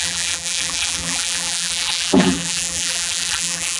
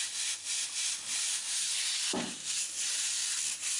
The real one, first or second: second